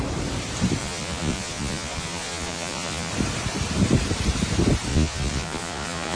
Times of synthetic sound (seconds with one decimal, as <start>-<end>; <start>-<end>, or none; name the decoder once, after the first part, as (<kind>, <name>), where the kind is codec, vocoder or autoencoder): 0.8-3.1 (vocoder, Vocos); 4.9-6.2